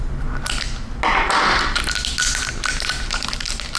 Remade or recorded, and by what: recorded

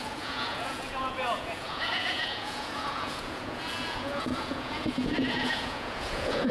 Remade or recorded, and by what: remade, vocoder, Vocos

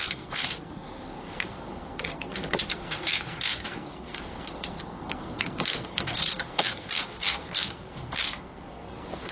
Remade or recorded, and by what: remade, codec, SNAC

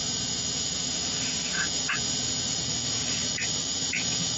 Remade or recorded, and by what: remade, vocoder, BigVGAN v2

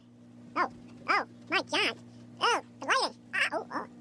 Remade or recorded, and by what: recorded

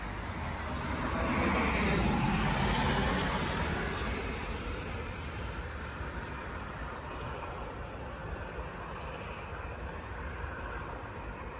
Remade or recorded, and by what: recorded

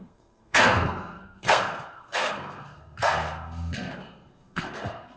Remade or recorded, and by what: remade, codec, SNAC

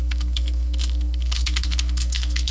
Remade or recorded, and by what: remade, codec, SNAC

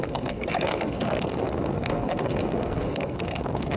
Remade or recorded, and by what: remade, codec, SNAC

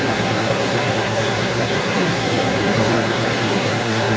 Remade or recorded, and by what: remade, codec, SNAC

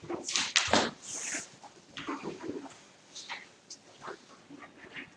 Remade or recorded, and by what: recorded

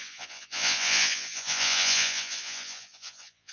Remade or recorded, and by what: remade, vocoder, Vocos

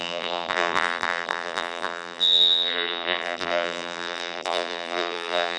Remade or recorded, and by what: remade, vocoder, BigVGAN v2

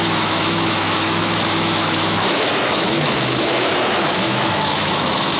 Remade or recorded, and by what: remade, autoencoder, DAC-VAE